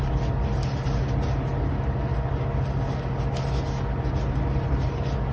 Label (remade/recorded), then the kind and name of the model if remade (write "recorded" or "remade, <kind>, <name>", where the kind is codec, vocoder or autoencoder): recorded